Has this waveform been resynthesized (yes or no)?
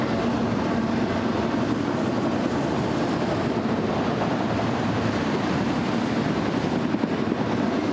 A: no